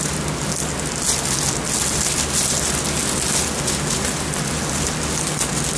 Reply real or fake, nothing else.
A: real